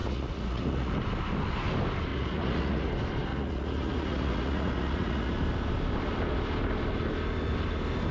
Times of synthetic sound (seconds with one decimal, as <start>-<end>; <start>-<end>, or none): 0.0-0.9; 2.1-2.9; 3.3-5.3